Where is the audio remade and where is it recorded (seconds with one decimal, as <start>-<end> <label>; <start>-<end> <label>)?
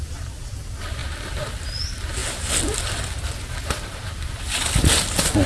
0.0-5.5 recorded